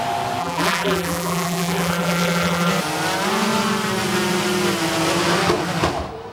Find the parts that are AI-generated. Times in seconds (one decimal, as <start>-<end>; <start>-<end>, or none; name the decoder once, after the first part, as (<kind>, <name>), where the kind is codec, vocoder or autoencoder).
0.4-2.7 (vocoder, BigVGAN v2)